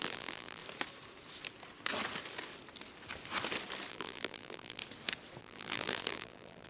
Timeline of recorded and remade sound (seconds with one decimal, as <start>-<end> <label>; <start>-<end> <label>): 0.0-0.6 remade; 0.6-3.9 recorded; 3.9-4.8 remade; 4.8-5.4 recorded; 5.4-6.7 remade